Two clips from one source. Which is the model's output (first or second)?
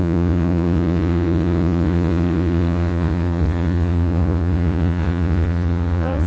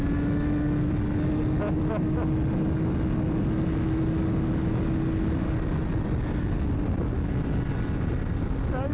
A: first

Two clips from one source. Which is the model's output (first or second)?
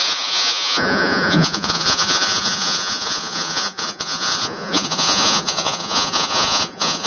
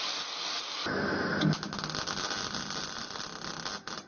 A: first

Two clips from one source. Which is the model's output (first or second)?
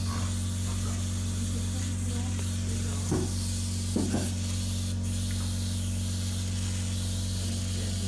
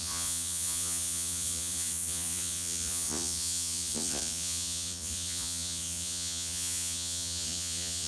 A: second